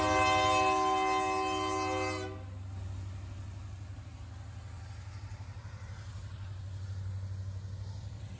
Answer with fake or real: real